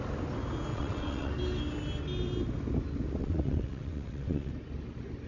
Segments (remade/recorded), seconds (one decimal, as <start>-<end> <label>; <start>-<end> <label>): 0.0-0.7 recorded; 0.7-1.3 remade; 1.3-3.2 recorded; 3.2-4.5 remade; 4.5-5.3 recorded

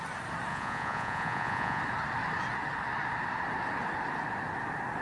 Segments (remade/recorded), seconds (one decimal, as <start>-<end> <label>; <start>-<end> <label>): 0.0-0.5 recorded; 0.5-1.8 remade; 1.8-5.0 recorded

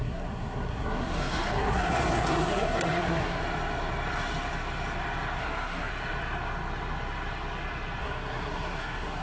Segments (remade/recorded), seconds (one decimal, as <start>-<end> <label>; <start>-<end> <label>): 0.0-3.4 remade; 3.4-5.4 recorded; 5.4-5.9 remade; 5.9-8.0 recorded; 8.0-9.2 remade

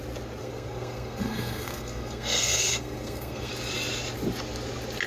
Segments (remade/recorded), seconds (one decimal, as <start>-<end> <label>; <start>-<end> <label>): 0.0-0.4 recorded; 0.4-3.5 remade; 3.5-5.1 recorded

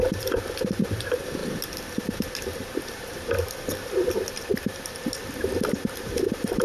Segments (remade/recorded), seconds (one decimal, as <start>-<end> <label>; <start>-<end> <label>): 0.0-6.6 remade

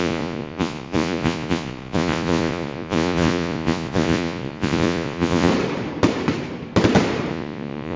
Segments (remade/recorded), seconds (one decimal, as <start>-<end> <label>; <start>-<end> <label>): 0.0-5.5 remade; 5.5-7.3 recorded; 7.3-8.0 remade

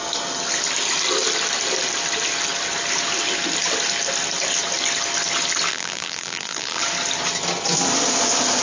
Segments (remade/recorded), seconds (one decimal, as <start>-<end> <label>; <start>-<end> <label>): 0.0-5.7 recorded; 5.7-6.8 remade; 6.8-8.6 recorded

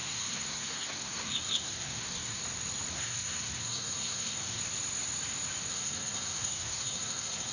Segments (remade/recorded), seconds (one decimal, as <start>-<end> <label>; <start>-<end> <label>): 0.0-2.4 remade; 2.4-2.9 recorded; 2.9-4.6 remade; 4.6-5.7 recorded; 5.7-7.5 remade